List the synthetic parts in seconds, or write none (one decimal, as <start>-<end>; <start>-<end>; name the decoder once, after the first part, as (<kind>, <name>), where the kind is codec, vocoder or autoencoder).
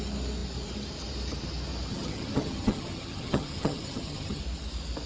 1.9-4.4 (vocoder, HiFi-GAN)